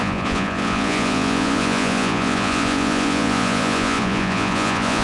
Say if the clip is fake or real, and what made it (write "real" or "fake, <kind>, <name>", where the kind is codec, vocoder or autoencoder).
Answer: fake, vocoder, Vocos